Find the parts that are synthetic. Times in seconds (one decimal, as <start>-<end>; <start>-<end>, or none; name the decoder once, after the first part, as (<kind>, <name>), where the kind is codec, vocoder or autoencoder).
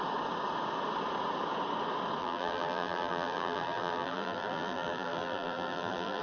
2.2-6.2 (vocoder, BigVGAN v2)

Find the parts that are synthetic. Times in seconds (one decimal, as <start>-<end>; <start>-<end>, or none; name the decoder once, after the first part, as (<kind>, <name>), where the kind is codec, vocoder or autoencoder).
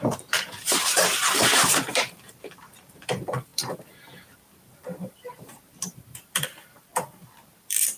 0.0-6.9 (vocoder, BigVGAN v2); 7.6-8.0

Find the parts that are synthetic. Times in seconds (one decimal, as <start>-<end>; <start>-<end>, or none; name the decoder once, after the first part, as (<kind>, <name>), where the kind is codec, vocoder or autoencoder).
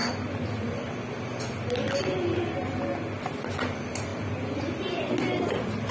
none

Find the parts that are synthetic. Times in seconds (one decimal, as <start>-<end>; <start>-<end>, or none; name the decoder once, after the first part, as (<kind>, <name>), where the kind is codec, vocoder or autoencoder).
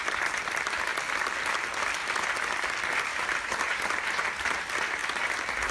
3.1-4.6 (vocoder, BigVGAN v2)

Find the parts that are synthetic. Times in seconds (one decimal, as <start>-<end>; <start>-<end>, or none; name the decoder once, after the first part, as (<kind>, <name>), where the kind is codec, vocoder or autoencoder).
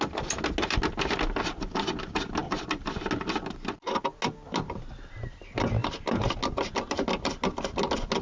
none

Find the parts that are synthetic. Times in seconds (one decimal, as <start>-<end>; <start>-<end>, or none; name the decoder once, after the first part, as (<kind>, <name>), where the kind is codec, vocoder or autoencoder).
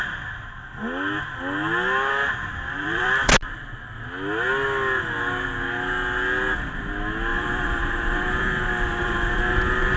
2.4-3.3 (vocoder, BigVGAN v2); 7.3-9.4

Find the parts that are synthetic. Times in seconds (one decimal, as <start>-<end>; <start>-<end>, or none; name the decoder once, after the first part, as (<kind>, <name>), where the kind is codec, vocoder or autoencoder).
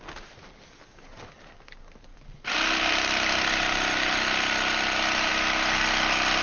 none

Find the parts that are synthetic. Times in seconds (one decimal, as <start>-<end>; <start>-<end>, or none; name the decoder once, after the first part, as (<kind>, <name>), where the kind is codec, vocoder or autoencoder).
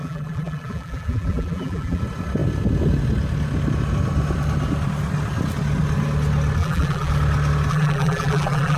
0.0-2.0 (vocoder, BigVGAN v2); 6.6-7.1; 7.7-8.8